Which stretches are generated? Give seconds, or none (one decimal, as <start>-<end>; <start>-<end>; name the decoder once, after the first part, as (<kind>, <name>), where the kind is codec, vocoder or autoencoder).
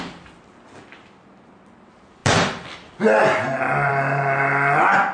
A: none